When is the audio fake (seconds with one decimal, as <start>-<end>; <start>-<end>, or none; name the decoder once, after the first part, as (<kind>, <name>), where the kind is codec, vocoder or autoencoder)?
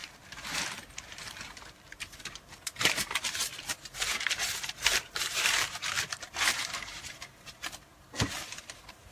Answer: 0.0-7.9 (vocoder, BigVGAN v2); 8.6-9.1